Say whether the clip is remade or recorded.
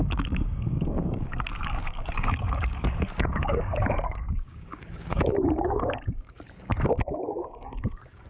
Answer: remade